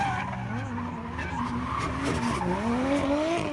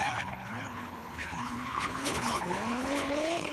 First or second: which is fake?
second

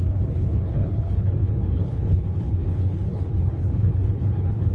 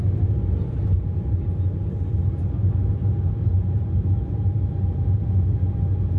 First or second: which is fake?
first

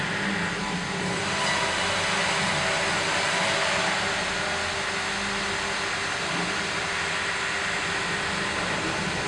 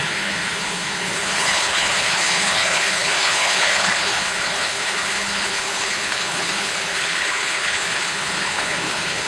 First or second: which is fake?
second